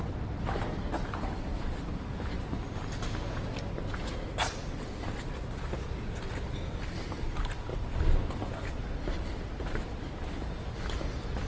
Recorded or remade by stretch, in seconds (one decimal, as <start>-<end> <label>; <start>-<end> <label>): 0.0-4.4 recorded; 4.4-4.9 remade; 4.9-7.7 recorded; 7.7-10.9 remade; 10.9-11.5 recorded